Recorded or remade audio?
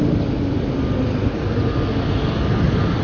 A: recorded